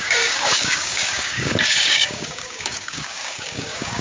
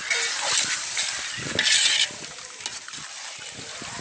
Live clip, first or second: second